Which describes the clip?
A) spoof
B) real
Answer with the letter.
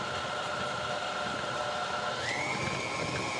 B